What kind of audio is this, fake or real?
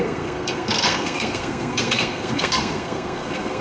fake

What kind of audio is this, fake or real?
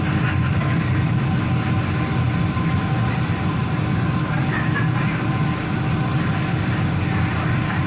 real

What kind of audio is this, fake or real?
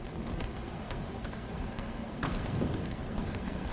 fake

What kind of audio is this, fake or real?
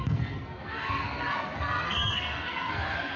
fake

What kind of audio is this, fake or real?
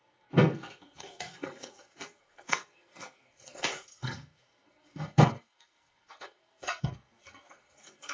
fake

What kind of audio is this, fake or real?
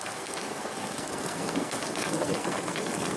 fake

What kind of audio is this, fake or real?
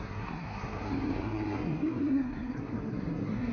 fake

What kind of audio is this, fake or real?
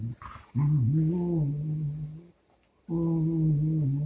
real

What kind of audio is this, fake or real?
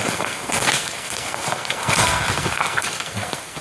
fake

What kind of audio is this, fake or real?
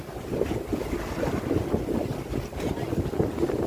real